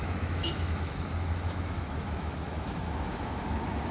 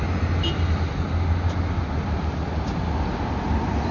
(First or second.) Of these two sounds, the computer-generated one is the first